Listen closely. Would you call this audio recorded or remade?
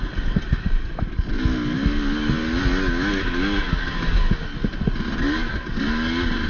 recorded